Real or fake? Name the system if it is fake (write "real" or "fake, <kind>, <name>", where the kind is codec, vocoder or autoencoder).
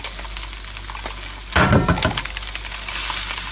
real